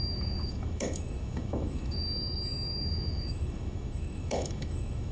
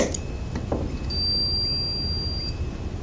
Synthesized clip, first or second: first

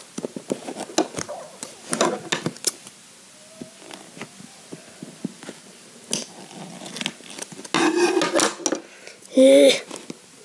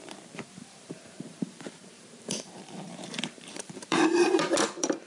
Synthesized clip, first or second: second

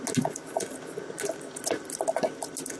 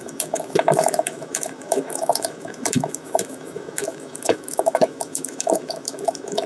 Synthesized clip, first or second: second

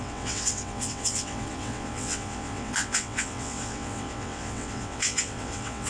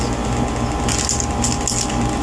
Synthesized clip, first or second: first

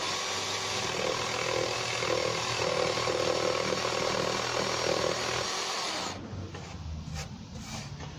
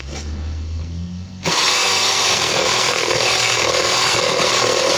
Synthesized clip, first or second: second